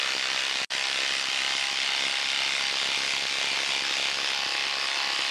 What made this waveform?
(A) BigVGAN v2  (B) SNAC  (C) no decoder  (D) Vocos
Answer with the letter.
C